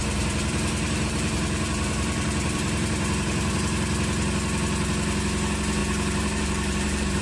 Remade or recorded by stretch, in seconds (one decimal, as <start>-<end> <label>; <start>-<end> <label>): 0.0-3.6 remade; 3.6-5.8 recorded; 5.8-7.2 remade